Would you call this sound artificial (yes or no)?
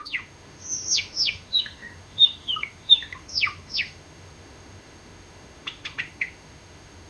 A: yes